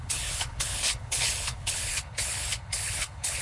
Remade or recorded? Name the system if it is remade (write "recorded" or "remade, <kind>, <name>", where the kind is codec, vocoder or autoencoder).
remade, codec, HILCodec